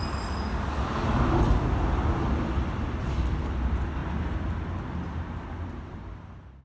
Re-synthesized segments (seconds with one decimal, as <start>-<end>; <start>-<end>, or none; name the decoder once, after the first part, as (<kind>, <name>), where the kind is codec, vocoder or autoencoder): none